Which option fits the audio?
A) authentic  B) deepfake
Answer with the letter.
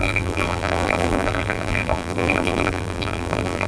B